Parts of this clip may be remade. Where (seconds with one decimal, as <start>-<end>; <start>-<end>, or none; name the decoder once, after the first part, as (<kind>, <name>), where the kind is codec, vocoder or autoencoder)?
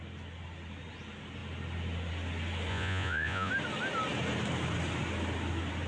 2.7-3.5 (vocoder, Vocos)